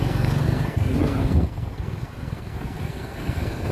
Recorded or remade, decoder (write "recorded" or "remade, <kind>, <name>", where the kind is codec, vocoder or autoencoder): remade, codec, SNAC